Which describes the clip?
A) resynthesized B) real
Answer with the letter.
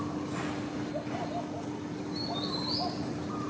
B